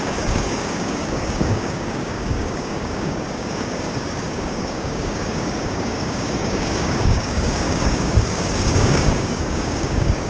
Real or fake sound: fake